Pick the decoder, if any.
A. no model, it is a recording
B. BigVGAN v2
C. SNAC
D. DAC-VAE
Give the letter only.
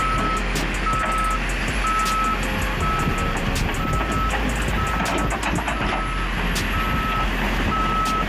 A